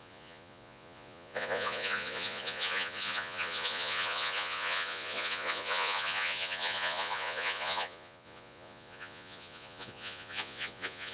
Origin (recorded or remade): remade